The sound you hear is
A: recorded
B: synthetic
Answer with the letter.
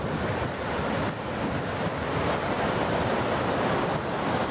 A